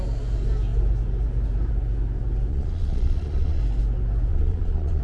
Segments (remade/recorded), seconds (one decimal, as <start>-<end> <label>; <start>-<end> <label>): 0.0-2.5 recorded; 2.5-3.6 remade; 3.6-4.3 recorded; 4.3-5.0 remade